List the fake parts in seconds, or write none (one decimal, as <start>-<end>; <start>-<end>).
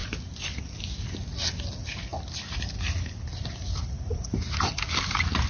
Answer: 0.0-0.6; 2.1-2.6; 3.3-5.1